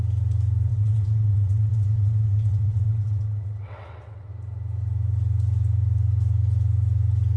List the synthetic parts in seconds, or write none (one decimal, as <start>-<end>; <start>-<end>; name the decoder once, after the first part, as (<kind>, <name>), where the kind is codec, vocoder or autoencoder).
0.7-4.3 (vocoder, WaveNeXt)